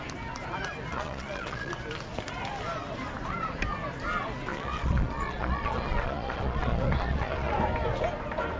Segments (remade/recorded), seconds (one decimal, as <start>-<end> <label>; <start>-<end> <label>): 0.0-0.9 recorded; 0.9-1.7 remade; 1.7-4.5 recorded; 4.5-7.5 remade; 7.5-8.6 recorded